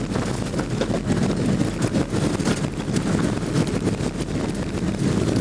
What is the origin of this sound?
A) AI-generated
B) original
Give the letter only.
B